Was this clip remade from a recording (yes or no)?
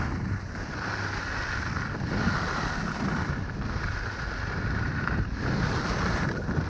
no